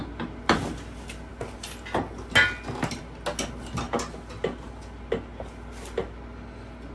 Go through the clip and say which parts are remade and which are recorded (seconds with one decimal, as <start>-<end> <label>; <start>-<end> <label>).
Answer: 0.0-6.9 recorded